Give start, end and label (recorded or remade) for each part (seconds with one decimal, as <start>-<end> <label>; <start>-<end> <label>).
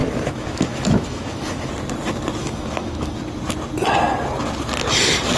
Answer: 0.0-1.7 remade; 1.7-2.4 recorded; 2.4-3.2 remade; 3.2-5.4 recorded